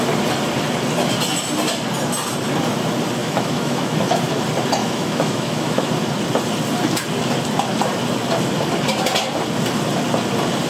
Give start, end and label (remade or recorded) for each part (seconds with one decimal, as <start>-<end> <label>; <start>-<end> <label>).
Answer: 0.0-3.2 recorded; 3.2-4.2 remade; 4.2-4.8 recorded; 4.8-5.9 remade; 5.9-10.7 recorded